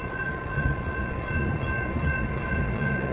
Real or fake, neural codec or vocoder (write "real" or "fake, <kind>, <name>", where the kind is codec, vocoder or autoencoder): fake, vocoder, Vocos